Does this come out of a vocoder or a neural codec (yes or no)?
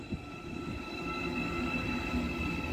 no